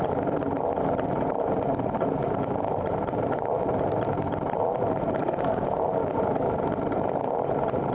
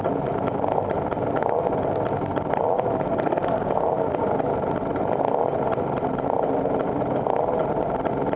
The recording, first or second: second